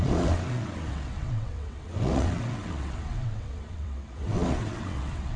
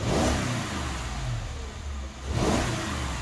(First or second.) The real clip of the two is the second